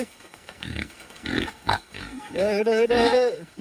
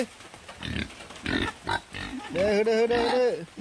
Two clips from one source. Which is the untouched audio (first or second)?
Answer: second